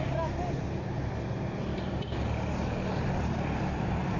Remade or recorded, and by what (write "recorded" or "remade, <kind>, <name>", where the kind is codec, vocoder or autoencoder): recorded